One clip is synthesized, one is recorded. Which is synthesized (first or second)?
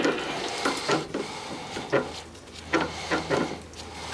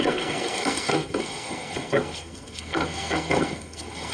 second